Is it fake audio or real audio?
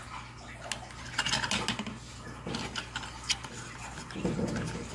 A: real